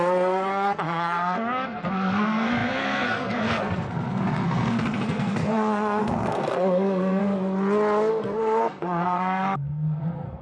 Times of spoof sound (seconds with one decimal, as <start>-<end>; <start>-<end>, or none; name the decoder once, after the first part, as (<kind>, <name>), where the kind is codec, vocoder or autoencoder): 0.0-7.2 (codec, SNAC); 8.1-10.4